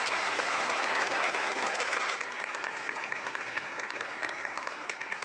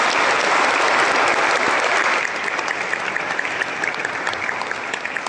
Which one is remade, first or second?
first